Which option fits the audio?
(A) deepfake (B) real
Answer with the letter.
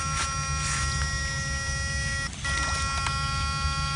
B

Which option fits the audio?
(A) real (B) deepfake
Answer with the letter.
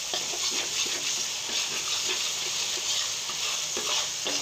A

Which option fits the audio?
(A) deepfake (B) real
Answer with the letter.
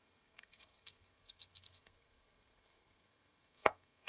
A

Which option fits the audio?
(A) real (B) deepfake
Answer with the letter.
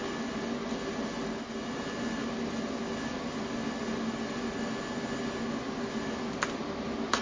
A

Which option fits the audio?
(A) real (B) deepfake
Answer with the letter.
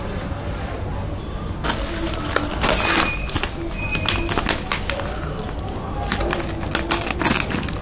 A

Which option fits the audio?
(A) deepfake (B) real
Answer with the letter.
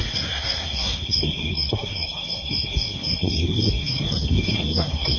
A